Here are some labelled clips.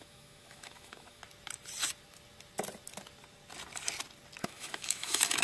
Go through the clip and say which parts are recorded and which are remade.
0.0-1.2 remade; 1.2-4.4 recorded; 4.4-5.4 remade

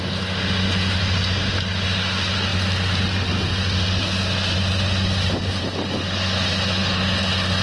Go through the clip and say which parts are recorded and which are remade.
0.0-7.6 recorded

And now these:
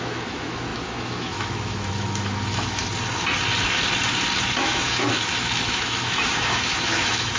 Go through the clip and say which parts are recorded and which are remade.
0.0-2.8 remade; 2.8-4.6 recorded; 4.6-7.4 remade